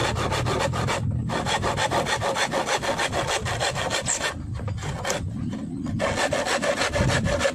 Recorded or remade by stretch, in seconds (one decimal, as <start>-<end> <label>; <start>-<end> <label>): 0.0-1.2 recorded; 1.2-1.8 remade; 1.8-7.5 recorded